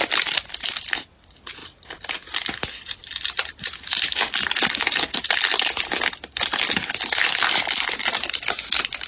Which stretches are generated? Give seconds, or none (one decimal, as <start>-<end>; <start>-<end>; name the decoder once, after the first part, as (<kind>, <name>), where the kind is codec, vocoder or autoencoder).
none